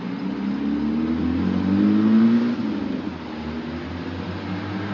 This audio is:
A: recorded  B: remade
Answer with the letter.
A